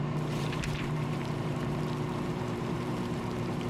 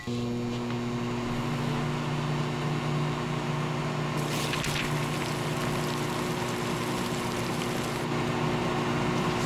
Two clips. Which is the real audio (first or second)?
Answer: second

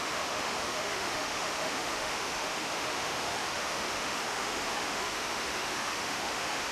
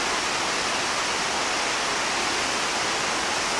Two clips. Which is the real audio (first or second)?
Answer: second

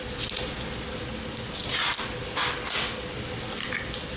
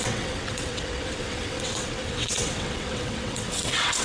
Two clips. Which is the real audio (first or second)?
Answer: first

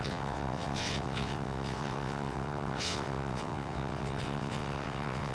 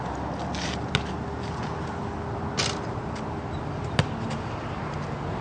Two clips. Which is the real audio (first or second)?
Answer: second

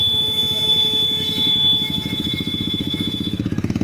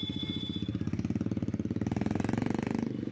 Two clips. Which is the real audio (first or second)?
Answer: second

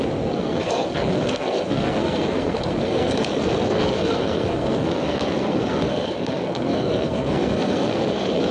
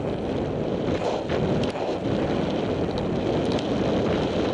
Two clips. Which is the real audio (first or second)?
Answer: second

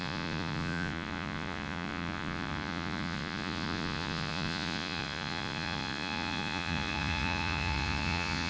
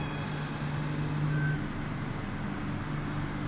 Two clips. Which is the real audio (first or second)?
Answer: second